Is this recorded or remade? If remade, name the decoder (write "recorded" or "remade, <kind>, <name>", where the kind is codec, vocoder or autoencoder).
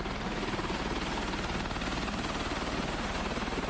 recorded